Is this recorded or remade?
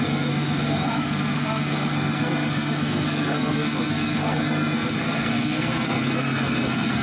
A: remade